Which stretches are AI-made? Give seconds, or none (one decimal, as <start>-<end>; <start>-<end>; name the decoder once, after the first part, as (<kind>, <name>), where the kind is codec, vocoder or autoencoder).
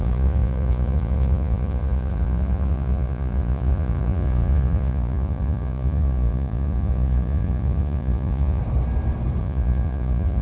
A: 0.0-8.6 (vocoder, Vocos); 9.4-10.4